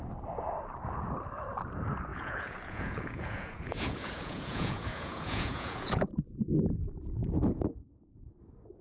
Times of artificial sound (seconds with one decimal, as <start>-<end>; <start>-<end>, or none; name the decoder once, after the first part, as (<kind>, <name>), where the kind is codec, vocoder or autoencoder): 2.1-6.1 (vocoder, Vocos)